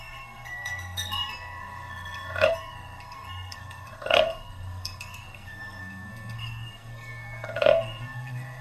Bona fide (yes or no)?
no